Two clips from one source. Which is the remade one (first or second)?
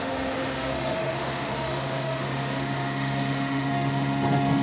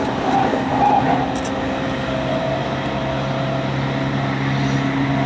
first